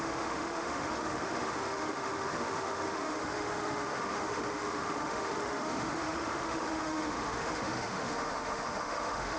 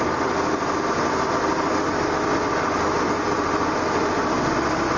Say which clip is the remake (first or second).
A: first